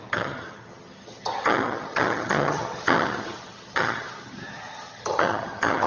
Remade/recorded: remade